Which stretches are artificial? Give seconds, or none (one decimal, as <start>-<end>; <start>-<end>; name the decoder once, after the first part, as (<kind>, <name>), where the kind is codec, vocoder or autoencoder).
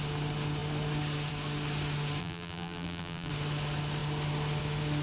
2.2-3.3 (vocoder, BigVGAN v2)